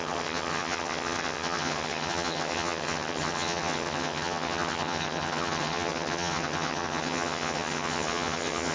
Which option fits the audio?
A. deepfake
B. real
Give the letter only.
A